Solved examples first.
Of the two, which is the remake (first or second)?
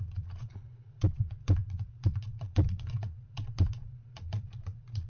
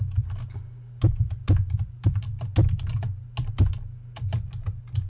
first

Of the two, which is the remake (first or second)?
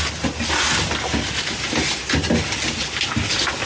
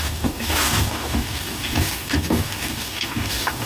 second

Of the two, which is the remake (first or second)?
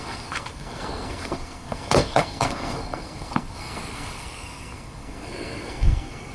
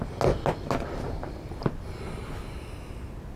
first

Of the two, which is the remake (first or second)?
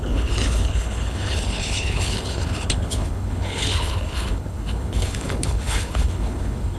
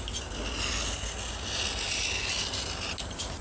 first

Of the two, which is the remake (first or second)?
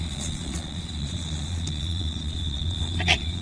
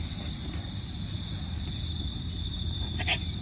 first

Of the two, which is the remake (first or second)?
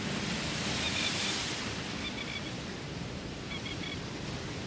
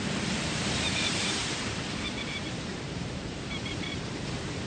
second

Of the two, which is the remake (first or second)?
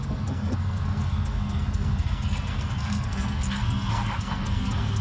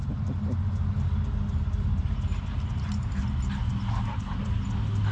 first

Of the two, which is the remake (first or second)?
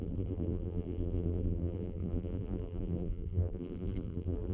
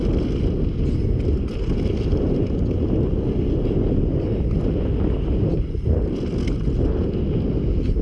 first